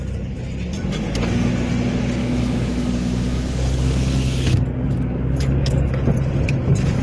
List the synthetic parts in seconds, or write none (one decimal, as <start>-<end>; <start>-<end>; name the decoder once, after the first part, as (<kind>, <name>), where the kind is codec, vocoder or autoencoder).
0.7-1.5 (codec, DAC); 2.2-5.9